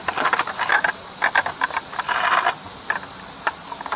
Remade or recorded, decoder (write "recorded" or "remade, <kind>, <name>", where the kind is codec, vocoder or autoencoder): recorded